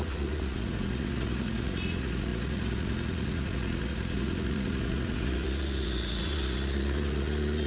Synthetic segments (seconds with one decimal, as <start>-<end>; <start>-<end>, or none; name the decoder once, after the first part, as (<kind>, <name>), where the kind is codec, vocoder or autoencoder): 0.0-7.7 (vocoder, Vocos)